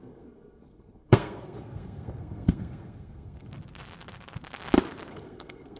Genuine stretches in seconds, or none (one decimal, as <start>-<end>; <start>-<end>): 3.5-5.1